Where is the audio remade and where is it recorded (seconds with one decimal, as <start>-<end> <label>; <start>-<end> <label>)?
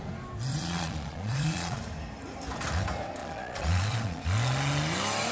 0.0-0.5 recorded; 0.5-1.8 remade; 1.8-3.2 recorded; 3.2-4.2 remade; 4.2-5.3 recorded